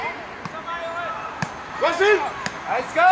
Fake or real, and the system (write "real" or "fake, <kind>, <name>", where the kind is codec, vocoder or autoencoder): real